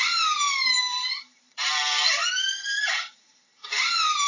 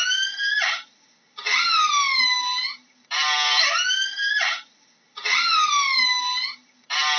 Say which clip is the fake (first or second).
first